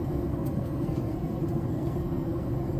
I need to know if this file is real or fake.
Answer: fake